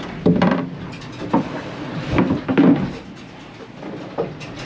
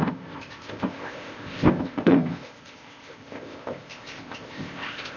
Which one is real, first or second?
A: first